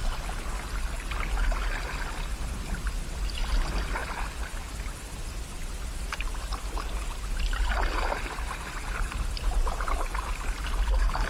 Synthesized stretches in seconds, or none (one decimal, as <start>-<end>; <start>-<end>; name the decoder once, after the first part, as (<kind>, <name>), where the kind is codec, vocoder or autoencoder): none